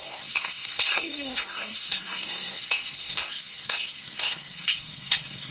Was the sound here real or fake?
fake